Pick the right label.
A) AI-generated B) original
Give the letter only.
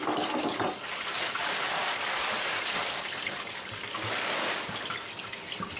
B